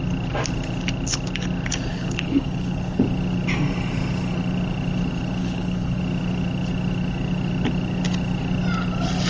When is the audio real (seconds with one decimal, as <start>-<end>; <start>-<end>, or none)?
0.0-1.9; 3.0-5.4; 6.0-9.3